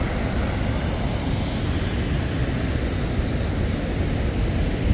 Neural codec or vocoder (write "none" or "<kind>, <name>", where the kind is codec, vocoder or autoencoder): none